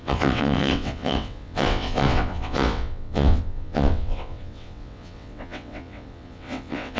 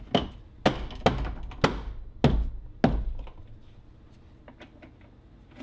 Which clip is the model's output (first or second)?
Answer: first